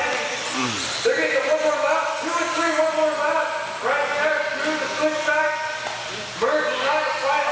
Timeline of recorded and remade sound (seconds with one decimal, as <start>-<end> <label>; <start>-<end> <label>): 0.0-2.3 recorded; 2.3-2.8 remade; 2.8-7.5 recorded